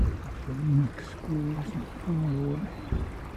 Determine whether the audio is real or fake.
real